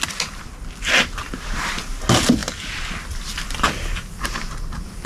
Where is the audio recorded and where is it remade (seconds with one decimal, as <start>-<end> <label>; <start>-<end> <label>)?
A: 0.0-5.1 recorded